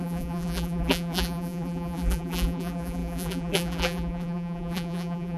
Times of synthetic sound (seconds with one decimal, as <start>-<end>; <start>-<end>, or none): 0.0-5.4